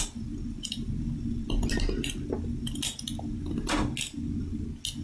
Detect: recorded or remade recorded